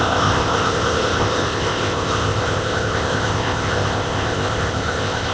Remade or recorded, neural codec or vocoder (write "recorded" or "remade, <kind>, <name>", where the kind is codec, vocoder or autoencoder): remade, codec, ZipCodec